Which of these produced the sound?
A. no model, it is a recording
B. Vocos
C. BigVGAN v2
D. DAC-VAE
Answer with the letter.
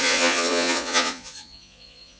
B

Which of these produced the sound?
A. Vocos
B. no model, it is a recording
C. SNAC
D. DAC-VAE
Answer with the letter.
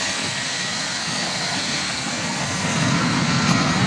C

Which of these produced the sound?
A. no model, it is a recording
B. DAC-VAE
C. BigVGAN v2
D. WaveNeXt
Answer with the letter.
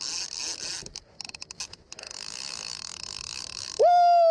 A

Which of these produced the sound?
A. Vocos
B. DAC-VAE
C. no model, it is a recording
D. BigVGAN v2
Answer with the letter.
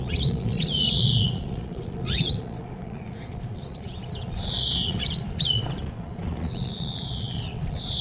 A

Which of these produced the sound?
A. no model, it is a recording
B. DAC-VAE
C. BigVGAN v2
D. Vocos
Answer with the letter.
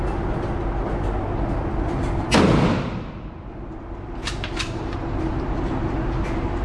A